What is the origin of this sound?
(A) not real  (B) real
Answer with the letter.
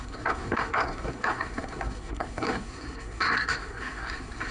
A